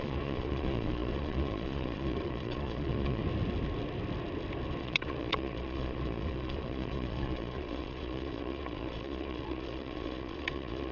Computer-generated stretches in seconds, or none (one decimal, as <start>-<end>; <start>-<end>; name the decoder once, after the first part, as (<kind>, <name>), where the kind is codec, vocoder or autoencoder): 0.0-3.2 (vocoder, Vocos); 4.8-10.9